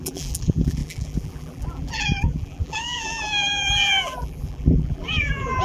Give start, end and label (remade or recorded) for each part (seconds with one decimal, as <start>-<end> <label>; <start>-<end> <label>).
0.0-5.6 remade